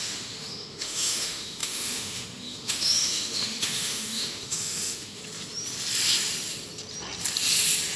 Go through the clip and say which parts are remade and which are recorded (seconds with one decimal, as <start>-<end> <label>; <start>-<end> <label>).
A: 0.0-5.2 remade; 5.2-8.0 recorded